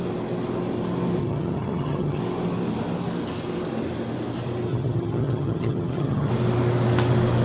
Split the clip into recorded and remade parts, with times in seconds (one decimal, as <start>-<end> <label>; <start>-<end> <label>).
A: 0.0-1.2 recorded; 1.2-2.2 remade; 2.2-4.7 recorded; 4.7-6.3 remade; 6.3-7.4 recorded